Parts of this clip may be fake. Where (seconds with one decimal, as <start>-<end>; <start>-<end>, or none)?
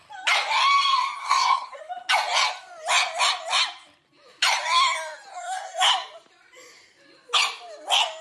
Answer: 1.2-1.8; 5.3-5.9